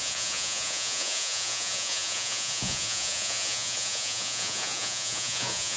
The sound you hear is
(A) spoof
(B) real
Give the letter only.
A